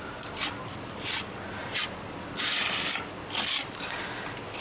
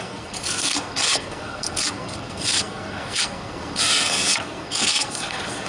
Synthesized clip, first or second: second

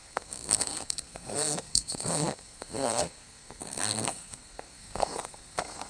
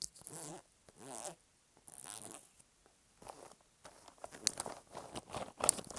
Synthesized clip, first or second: first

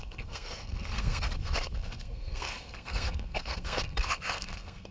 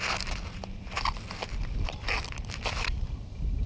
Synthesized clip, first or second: first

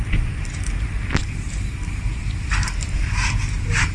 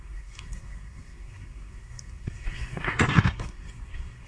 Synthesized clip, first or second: second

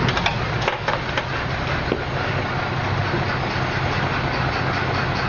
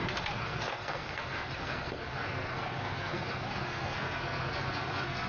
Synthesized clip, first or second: second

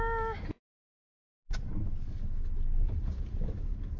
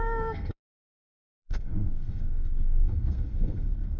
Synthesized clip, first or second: second